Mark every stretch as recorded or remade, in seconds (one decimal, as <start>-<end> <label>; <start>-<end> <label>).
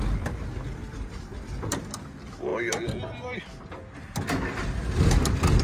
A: 0.0-0.8 recorded; 0.8-1.4 remade; 1.4-5.6 recorded